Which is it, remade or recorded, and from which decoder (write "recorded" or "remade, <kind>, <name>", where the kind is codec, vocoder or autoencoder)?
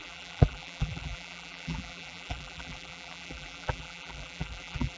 remade, vocoder, BigVGAN v2